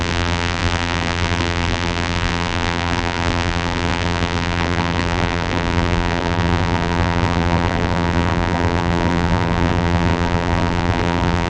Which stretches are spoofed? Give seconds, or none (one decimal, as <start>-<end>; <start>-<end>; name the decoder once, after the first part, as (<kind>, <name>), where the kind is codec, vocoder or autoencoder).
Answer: 0.0-11.5 (vocoder, BigVGAN v2)